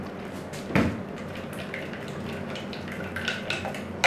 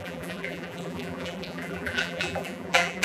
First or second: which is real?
first